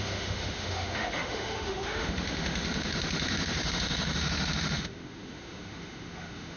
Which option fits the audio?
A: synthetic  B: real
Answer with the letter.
A